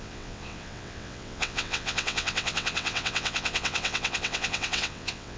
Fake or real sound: fake